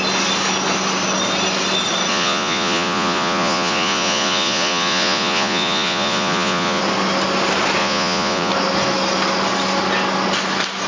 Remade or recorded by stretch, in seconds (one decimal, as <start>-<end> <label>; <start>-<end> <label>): 0.0-2.1 recorded; 2.1-6.8 remade; 6.8-7.8 recorded; 7.8-8.5 remade; 8.5-10.9 recorded